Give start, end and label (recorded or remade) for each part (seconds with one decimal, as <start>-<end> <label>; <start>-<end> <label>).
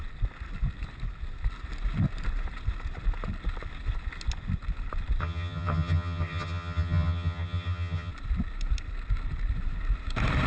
0.0-5.2 recorded; 5.2-8.1 remade; 8.1-10.5 recorded